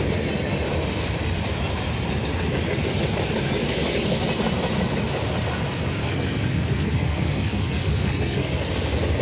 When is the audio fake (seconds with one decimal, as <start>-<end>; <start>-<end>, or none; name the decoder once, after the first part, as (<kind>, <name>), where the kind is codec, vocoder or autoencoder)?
6.0-8.7 (codec, SNAC)